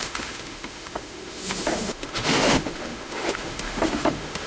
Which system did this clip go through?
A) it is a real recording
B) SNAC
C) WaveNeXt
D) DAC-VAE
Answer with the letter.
D